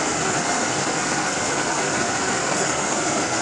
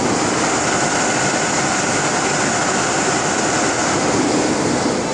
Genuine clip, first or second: second